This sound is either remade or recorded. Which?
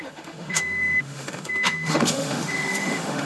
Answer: remade